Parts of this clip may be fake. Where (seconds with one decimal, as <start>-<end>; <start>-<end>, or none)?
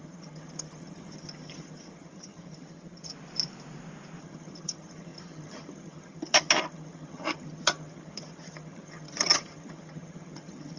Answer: 0.0-3.1; 4.2-10.8